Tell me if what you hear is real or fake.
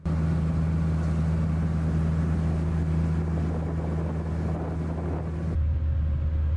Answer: real